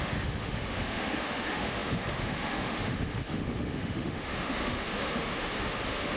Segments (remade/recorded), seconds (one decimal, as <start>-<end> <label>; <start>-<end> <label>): 0.0-6.2 remade